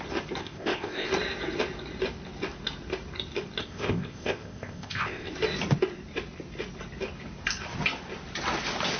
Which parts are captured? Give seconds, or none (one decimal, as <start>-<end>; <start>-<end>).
0.0-0.4; 1.1-3.6; 5.3-9.0